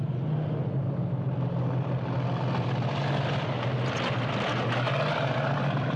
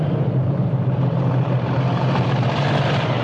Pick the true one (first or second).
first